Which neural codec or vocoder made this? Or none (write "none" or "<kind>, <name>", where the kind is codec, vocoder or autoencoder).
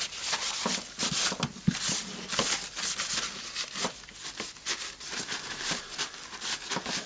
none